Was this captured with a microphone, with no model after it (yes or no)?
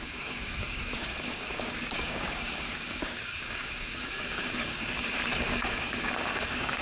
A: no